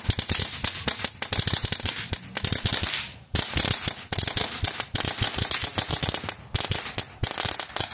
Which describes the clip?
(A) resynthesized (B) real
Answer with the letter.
B